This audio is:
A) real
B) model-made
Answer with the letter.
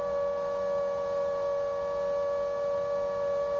A